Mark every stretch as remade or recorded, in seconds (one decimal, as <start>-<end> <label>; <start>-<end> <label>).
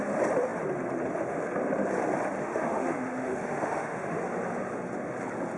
0.0-2.4 recorded; 2.4-4.2 remade; 4.2-5.6 recorded